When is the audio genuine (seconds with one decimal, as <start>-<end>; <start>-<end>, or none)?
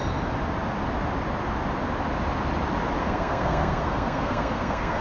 0.0-3.0